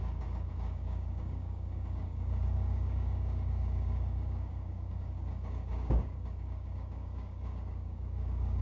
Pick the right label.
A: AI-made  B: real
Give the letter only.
A